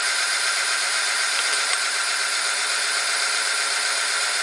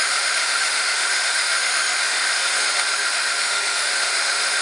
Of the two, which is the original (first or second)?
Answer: first